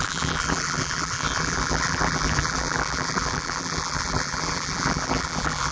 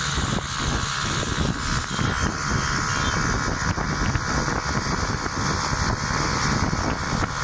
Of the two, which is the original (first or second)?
second